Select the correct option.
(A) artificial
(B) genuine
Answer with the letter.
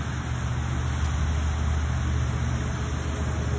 B